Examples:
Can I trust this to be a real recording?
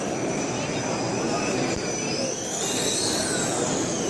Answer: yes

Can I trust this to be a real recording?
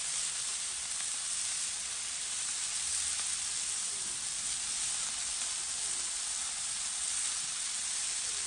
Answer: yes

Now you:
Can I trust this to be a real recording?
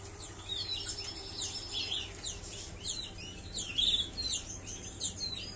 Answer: no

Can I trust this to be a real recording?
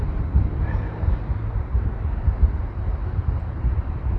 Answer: no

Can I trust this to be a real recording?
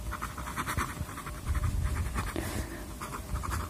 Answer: no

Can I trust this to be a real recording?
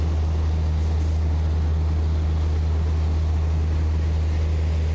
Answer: yes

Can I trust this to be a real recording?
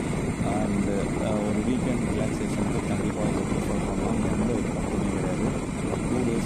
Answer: yes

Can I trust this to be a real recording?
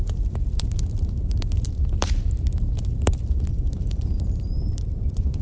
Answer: no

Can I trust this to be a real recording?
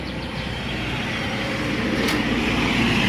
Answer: no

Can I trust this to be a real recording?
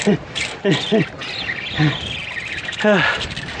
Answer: yes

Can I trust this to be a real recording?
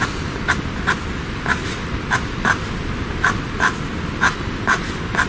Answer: yes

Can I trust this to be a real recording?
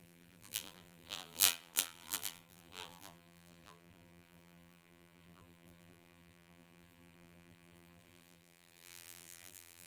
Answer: no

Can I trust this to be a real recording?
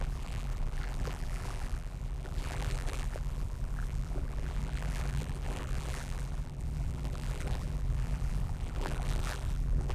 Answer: no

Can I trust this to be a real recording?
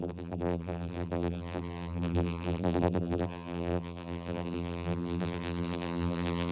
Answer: no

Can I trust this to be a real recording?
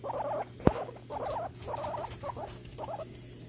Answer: yes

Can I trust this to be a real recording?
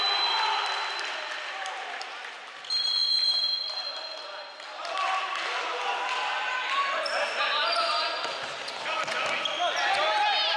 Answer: yes